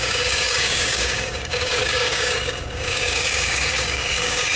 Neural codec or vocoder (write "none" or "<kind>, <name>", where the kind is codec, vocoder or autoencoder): codec, DAC